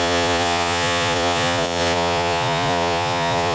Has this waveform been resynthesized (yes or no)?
yes